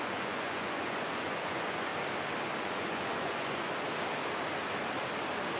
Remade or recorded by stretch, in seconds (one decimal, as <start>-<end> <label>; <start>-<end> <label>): 0.0-1.9 remade; 1.9-2.6 recorded; 2.6-3.7 remade; 3.7-5.6 recorded